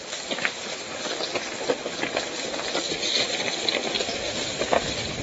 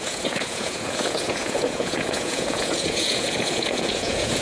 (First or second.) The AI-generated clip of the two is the second